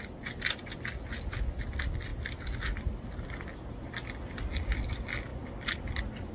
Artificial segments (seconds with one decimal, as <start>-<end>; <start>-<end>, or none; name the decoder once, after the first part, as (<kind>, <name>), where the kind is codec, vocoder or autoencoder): none